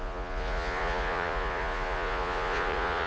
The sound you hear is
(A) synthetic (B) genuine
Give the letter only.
A